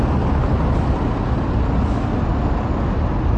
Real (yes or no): yes